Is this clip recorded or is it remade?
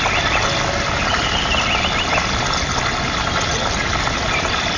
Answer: recorded